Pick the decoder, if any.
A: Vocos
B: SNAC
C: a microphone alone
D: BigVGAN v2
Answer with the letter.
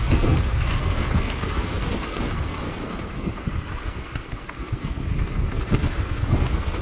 B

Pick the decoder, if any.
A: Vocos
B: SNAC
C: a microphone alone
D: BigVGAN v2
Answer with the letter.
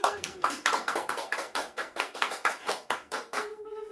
B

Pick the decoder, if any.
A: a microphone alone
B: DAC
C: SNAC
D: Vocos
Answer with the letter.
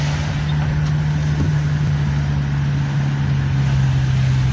A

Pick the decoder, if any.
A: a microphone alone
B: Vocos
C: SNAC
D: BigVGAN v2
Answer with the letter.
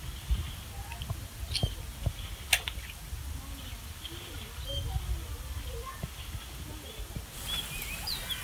A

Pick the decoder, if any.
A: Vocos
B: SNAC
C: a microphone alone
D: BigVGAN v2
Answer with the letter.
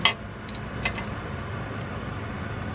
C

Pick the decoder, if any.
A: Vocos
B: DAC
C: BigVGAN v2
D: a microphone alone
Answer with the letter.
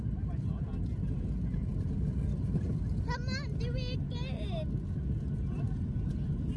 D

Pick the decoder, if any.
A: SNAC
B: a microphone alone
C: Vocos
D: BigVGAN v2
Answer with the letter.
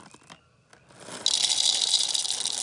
B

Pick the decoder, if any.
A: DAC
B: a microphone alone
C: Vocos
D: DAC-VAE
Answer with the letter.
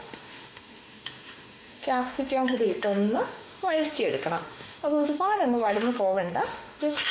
D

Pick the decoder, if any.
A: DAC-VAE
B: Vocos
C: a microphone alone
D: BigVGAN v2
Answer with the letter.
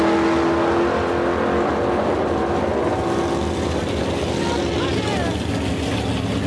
C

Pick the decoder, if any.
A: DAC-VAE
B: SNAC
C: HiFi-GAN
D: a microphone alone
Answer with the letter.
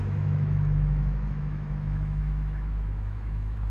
A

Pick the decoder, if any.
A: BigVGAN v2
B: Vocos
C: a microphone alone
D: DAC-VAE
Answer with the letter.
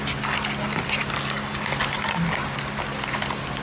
C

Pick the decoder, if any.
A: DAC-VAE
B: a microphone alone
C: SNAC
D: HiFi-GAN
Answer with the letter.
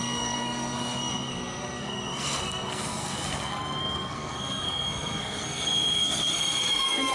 C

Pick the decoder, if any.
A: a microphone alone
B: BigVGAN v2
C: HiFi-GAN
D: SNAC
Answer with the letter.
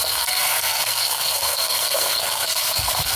D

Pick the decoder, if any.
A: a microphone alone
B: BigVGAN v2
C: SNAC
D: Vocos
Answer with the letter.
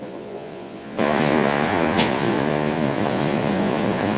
D